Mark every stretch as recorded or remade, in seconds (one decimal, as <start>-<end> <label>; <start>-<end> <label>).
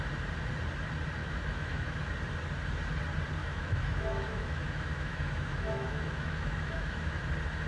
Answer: 0.0-1.2 recorded; 1.2-2.0 remade; 2.0-3.4 recorded; 3.4-7.3 remade; 7.3-7.7 recorded